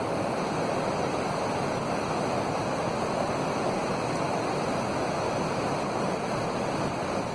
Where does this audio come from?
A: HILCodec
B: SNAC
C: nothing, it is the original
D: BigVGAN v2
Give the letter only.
C